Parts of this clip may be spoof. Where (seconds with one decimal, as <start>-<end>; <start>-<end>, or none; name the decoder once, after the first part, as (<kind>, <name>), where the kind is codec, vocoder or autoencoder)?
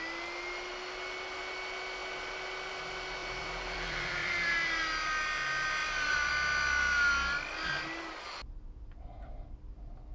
3.2-4.8 (vocoder, BigVGAN v2); 5.8-6.3